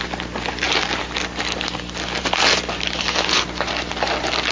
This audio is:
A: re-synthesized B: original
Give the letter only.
B